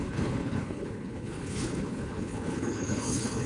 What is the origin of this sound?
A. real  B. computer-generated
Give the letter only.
B